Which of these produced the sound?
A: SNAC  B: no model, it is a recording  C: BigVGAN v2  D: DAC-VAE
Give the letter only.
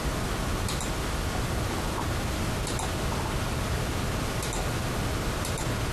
B